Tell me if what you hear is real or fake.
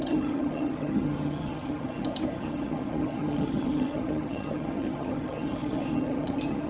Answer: fake